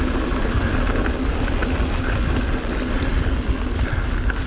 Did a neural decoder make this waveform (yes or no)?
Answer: no